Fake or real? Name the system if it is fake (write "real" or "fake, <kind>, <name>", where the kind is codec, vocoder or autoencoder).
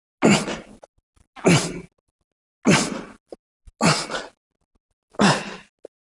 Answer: real